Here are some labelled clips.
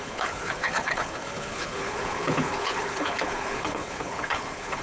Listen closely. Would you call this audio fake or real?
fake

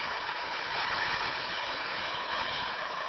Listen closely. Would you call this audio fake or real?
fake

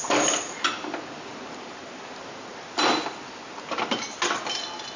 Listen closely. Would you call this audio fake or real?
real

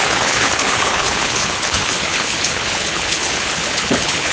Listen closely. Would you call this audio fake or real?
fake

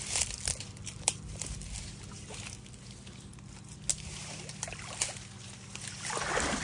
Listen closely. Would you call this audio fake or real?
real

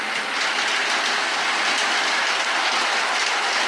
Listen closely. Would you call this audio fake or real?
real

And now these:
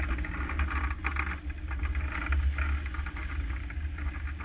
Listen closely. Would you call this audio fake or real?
real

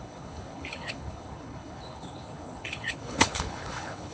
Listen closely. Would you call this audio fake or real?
fake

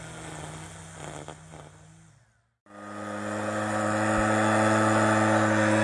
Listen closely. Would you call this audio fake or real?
real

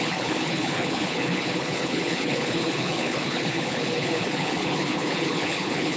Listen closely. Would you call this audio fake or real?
fake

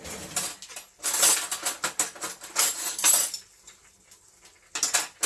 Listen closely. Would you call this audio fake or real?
real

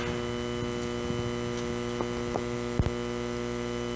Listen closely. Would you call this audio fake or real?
real